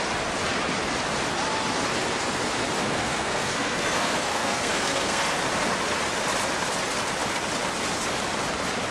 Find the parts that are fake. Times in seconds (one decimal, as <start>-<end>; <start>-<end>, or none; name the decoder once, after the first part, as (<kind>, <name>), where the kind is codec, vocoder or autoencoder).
2.8-5.4 (codec, SNAC)